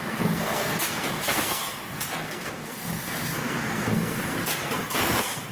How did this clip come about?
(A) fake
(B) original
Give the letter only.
A